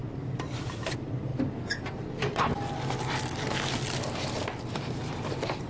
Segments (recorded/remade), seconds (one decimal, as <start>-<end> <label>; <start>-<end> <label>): 0.0-1.3 remade; 1.3-4.7 recorded; 4.7-5.7 remade